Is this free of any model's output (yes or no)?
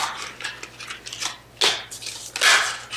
yes